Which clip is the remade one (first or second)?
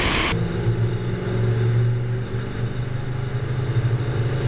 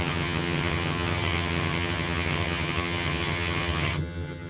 second